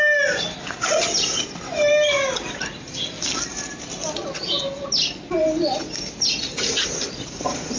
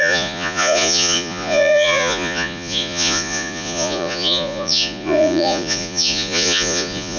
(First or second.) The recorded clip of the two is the first